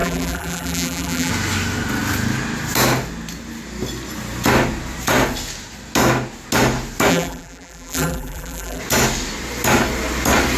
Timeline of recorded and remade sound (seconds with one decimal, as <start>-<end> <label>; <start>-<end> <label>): 0.0-1.3 remade; 1.3-7.1 recorded; 7.1-8.8 remade; 8.8-10.6 recorded